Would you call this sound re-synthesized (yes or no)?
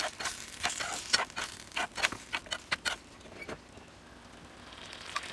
no